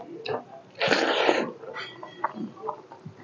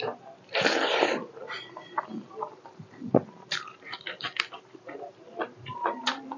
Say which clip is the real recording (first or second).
first